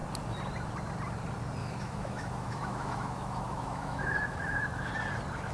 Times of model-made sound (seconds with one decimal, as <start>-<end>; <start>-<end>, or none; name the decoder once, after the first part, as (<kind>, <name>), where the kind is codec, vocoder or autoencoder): 1.6-4.9 (autoencoder, DAC-VAE)